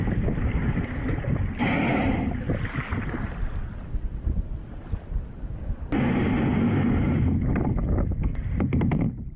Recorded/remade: recorded